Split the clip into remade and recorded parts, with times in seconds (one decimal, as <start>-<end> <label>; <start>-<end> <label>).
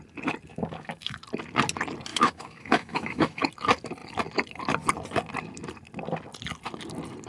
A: 0.0-0.5 recorded; 0.5-1.2 remade; 1.2-2.1 recorded; 2.1-3.5 remade; 3.5-7.3 recorded